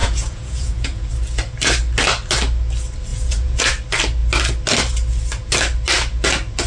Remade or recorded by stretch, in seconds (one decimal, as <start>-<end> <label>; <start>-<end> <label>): 0.0-1.1 remade; 1.1-3.1 recorded; 3.1-3.6 remade; 3.6-6.7 recorded